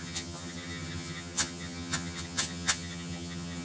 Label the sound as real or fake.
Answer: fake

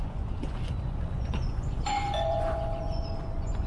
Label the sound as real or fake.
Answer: fake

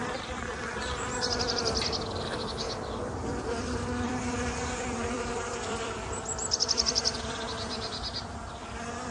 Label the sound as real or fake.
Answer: fake